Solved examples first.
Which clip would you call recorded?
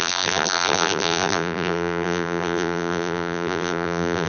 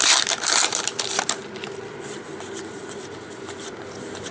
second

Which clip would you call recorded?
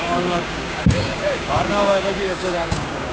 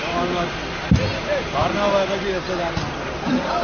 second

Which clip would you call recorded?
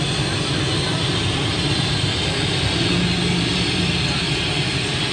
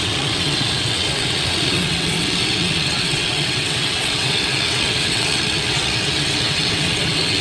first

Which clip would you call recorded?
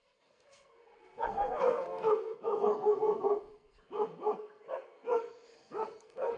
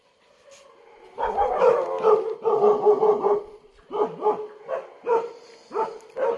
second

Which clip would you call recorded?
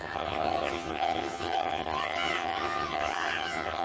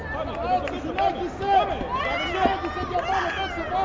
second